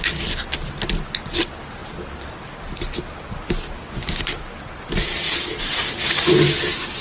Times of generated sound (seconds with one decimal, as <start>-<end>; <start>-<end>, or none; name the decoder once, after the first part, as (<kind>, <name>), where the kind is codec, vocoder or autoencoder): none

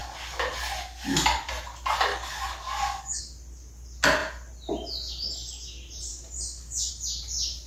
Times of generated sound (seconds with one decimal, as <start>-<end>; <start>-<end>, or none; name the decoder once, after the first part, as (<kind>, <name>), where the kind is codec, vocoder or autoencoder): 0.0-1.5 (codec, DAC); 2.1-3.2; 6.1-6.9

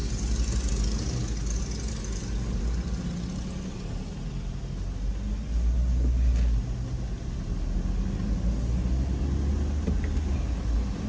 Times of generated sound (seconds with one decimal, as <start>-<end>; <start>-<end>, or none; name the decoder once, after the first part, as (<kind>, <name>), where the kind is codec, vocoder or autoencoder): none

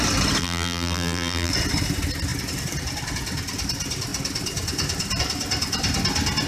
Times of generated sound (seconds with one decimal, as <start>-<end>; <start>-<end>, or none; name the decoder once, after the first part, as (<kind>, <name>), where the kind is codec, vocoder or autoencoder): 0.4-1.5 (vocoder, BigVGAN v2)